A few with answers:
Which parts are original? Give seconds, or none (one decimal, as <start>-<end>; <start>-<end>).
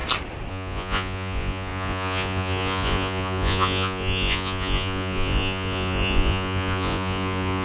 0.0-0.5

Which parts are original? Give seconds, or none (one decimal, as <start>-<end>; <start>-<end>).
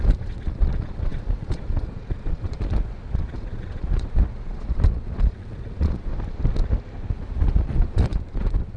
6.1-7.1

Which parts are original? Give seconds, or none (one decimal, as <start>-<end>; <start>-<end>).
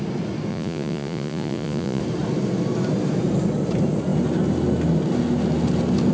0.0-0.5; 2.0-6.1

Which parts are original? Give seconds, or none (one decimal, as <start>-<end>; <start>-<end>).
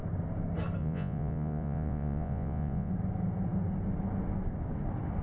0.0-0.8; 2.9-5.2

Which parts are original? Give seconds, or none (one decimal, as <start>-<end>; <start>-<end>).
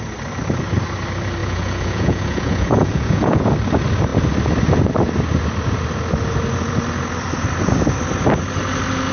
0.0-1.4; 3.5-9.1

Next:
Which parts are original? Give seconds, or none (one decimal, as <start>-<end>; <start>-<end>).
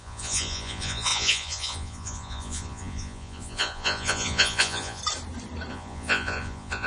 5.0-5.7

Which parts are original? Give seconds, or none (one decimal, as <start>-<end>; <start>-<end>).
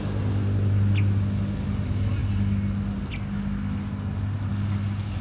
0.0-5.2